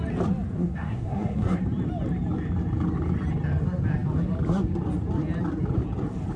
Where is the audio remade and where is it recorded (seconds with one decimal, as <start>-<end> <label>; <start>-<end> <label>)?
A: 0.0-0.6 recorded; 0.6-1.6 remade; 1.6-6.4 recorded